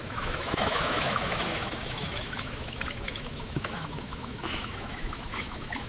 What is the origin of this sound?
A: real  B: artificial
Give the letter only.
B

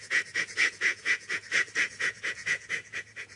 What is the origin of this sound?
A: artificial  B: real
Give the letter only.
A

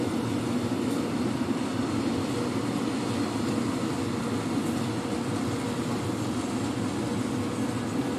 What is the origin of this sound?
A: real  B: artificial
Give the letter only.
A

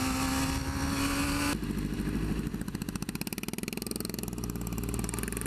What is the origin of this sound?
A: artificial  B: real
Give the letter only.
B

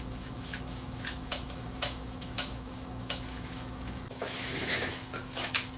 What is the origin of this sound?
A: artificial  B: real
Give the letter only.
A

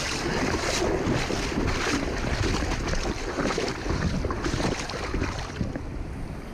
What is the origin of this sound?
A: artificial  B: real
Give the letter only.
B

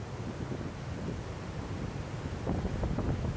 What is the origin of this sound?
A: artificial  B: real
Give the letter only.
B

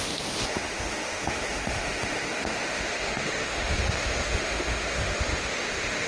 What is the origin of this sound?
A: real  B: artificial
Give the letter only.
B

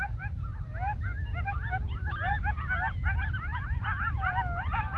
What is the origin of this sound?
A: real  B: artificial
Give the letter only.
A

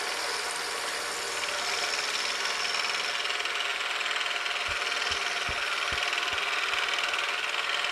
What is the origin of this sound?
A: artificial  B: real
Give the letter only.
B